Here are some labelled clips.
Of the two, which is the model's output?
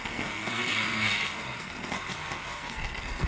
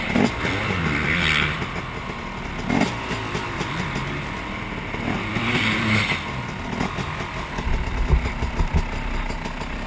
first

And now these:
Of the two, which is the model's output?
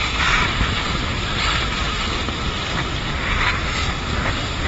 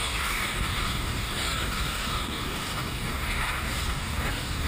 second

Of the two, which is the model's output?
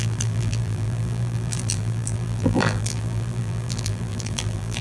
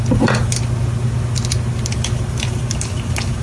first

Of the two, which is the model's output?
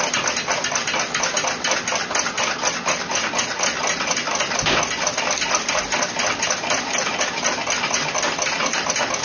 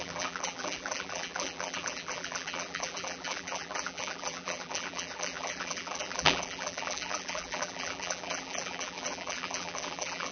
second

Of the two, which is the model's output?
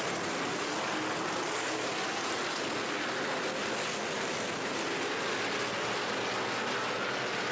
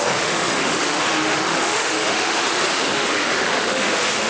second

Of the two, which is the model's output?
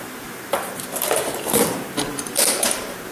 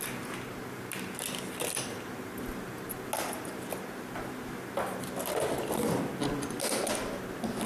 first